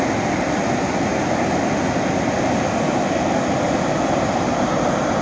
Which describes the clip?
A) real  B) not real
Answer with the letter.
A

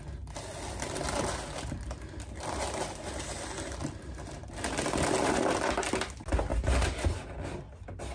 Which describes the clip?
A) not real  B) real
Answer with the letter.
B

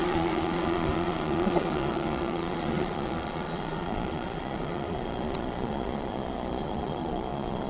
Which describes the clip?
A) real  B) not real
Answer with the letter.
B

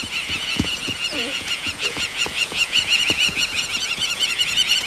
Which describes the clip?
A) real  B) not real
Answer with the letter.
B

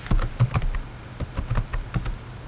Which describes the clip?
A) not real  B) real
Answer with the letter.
B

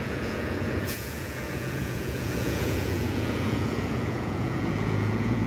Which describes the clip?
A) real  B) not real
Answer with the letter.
B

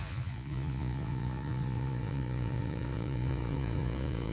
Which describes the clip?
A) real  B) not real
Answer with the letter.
B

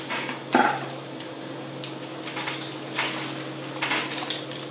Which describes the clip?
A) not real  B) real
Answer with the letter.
B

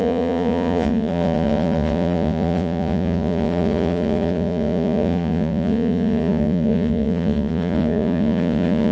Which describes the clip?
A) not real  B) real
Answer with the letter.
A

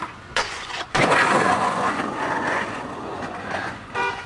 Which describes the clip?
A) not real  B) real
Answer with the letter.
A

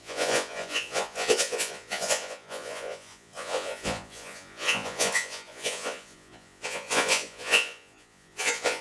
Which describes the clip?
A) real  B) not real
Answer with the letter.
B